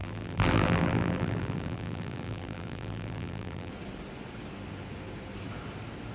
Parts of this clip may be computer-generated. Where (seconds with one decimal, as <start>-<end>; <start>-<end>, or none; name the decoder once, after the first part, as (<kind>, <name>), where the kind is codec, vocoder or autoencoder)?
0.0-3.7 (vocoder, BigVGAN v2)